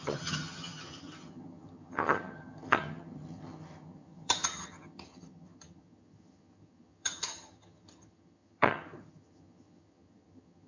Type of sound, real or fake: fake